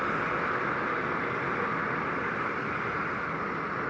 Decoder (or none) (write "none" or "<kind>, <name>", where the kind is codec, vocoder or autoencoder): none